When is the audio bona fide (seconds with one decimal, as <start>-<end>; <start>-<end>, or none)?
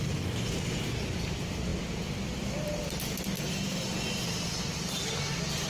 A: 0.0-5.7